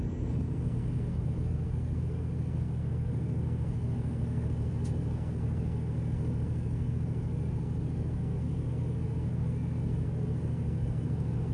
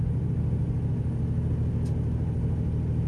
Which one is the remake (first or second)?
first